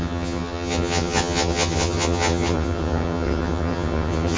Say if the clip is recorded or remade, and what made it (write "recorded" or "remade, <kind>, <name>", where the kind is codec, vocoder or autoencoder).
remade, vocoder, HiFi-GAN